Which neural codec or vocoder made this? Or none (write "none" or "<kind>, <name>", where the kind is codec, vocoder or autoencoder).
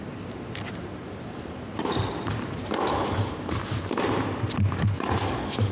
none